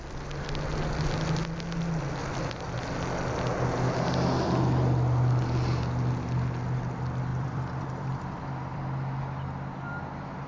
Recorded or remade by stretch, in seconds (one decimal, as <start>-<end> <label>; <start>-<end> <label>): 0.0-2.2 recorded; 2.2-3.0 remade; 3.0-7.3 recorded; 7.3-8.8 remade; 8.8-10.5 recorded